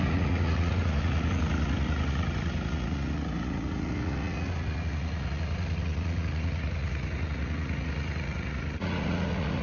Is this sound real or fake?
fake